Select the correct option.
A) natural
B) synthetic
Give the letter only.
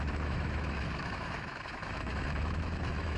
B